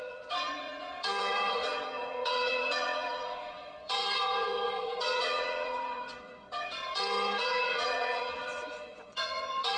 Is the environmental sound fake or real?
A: fake